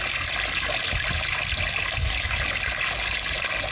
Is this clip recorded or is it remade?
recorded